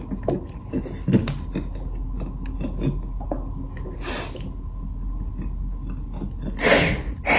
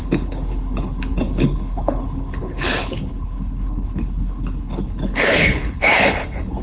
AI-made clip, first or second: second